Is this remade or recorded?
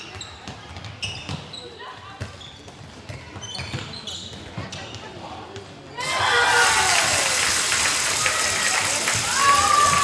recorded